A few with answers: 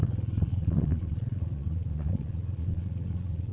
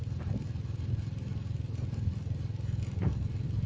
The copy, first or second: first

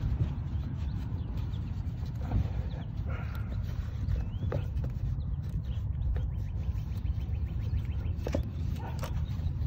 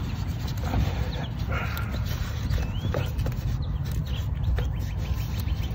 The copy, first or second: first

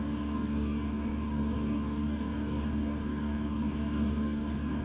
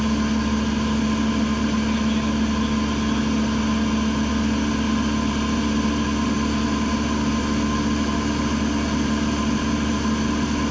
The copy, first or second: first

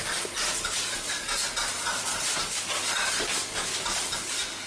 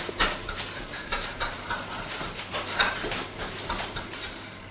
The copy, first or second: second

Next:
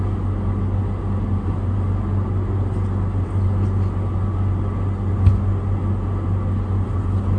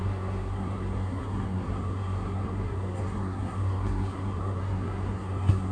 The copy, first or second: second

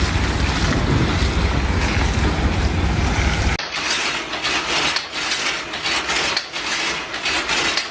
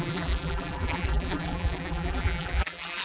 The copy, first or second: second